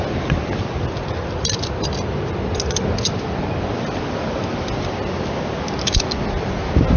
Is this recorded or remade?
recorded